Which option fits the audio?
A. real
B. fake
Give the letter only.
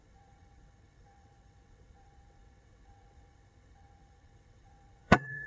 B